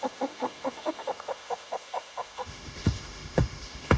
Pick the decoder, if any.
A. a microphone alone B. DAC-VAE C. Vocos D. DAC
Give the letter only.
B